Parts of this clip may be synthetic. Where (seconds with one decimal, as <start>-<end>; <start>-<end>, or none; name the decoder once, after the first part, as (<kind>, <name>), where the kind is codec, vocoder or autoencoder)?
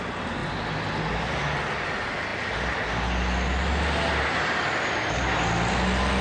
none